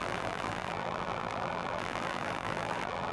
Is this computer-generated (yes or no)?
yes